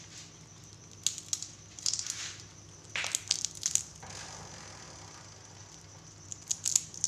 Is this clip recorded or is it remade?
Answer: recorded